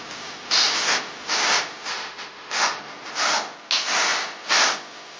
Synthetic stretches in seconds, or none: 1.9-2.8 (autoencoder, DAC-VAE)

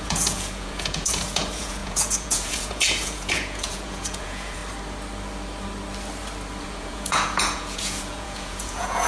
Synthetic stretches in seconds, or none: 0.0-4.6 (vocoder, Vocos); 6.6-9.1

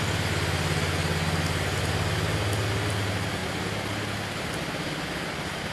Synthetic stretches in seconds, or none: none

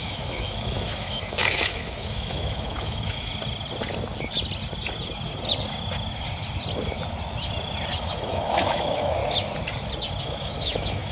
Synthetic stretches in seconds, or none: 0.0-3.3 (autoencoder, DAC-VAE); 8.0-9.2; 10.2-11.1

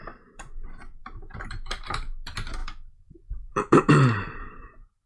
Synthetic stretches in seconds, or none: 0.0-5.1 (vocoder, BigVGAN v2)

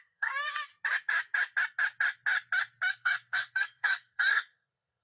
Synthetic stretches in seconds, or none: 0.0-0.7 (codec, SNAC); 2.9-5.0